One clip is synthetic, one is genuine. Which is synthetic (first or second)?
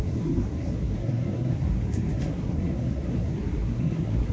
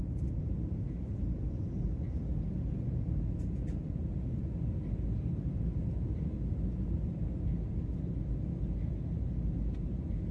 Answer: first